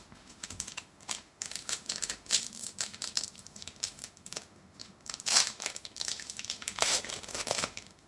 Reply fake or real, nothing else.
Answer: fake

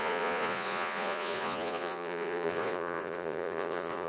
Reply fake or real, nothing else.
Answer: fake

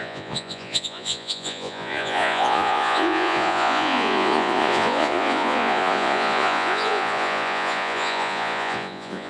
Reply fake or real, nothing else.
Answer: fake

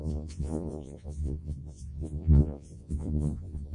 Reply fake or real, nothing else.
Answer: fake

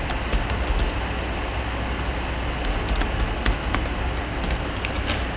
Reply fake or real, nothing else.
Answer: real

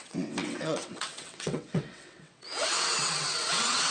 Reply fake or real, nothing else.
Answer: fake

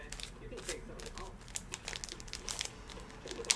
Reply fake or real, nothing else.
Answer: real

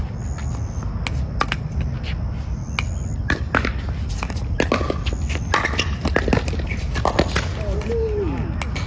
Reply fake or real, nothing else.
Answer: real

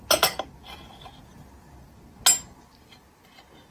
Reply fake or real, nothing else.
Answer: real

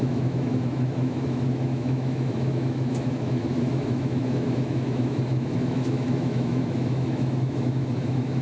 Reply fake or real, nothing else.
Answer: fake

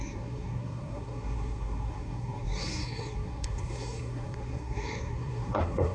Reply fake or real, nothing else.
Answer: fake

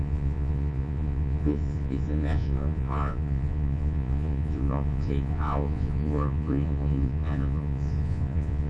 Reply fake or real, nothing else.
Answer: fake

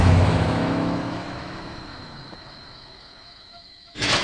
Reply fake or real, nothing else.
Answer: fake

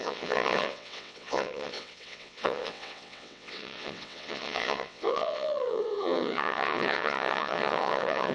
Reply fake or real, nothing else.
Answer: fake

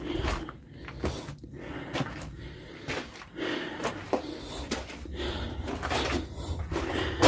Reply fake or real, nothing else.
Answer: real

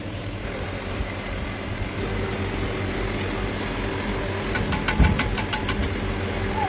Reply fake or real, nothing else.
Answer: real